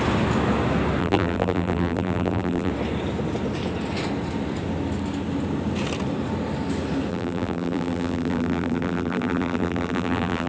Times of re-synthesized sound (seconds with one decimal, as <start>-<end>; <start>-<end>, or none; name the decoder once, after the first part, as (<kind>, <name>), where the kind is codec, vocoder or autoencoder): 1.0-2.7 (vocoder, BigVGAN v2); 7.1-10.5